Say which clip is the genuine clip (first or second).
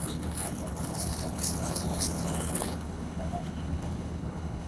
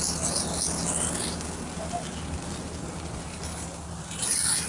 second